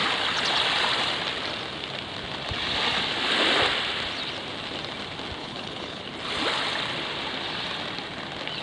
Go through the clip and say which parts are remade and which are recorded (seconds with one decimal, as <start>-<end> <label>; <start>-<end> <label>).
0.0-5.4 recorded; 5.4-6.0 remade; 6.0-8.6 recorded